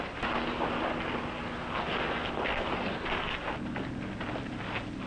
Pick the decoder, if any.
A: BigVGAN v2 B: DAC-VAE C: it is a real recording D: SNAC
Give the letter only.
C